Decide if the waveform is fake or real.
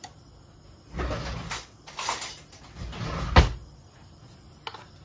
real